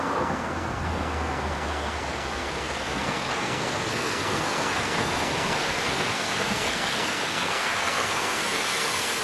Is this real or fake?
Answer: fake